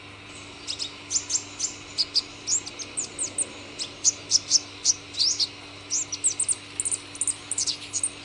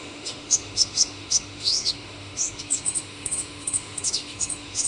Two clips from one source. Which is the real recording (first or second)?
first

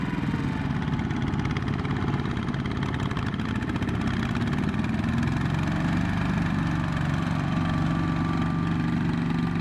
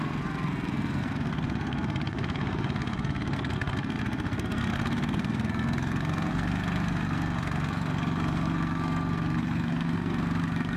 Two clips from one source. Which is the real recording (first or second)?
first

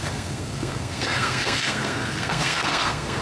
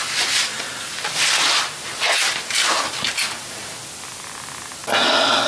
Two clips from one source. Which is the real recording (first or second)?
second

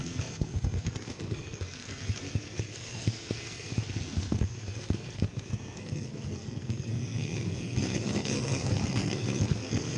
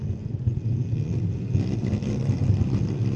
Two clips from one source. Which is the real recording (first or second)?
second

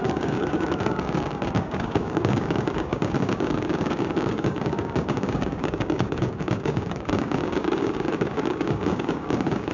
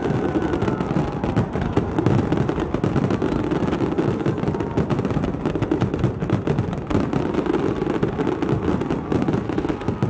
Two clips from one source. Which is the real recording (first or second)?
second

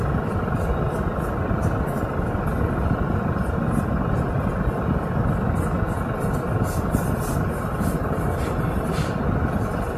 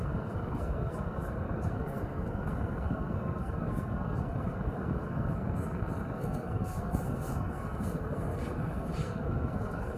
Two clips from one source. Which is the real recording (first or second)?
first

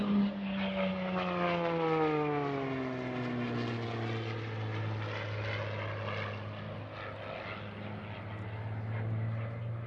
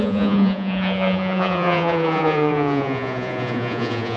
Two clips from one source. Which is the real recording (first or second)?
first